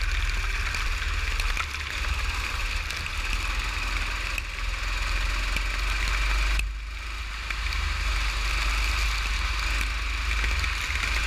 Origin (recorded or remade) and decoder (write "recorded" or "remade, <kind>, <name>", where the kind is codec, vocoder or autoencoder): recorded